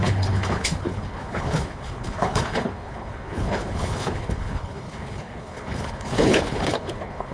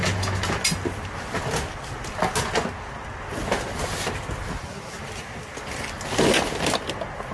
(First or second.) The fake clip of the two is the first